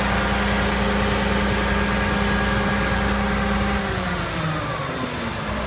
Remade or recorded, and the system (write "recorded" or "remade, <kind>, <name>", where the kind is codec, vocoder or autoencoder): recorded